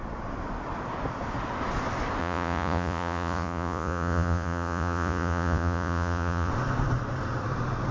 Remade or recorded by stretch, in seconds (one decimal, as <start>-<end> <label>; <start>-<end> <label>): 0.0-2.2 recorded; 2.2-6.5 remade; 6.5-7.9 recorded